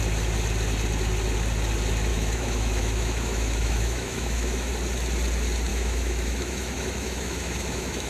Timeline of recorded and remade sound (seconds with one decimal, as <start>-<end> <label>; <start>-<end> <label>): 0.0-2.1 recorded; 2.1-4.7 remade; 4.7-5.7 recorded; 5.7-8.1 remade